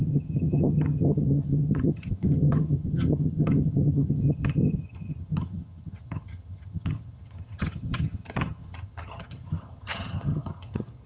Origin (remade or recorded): remade